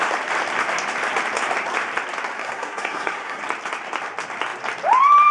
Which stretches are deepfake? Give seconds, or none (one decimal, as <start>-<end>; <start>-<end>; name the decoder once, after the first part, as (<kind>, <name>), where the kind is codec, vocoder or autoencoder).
2.4-3.4 (codec, SNAC)